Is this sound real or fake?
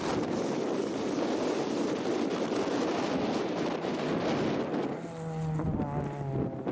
real